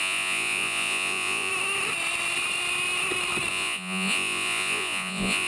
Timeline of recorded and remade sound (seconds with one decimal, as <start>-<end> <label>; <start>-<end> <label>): 0.0-1.5 remade; 1.5-3.5 recorded; 3.5-5.5 remade